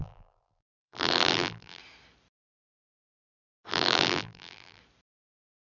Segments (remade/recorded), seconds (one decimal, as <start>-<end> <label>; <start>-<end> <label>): 0.0-1.8 remade; 1.8-3.7 recorded; 3.7-4.8 remade; 4.8-5.7 recorded